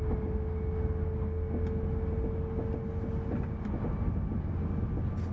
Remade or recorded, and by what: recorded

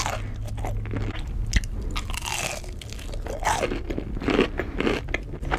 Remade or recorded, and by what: recorded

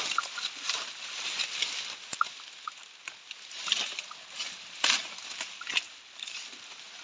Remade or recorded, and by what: recorded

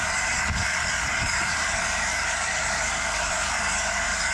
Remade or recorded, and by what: remade, codec, DAC